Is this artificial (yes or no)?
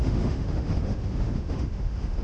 yes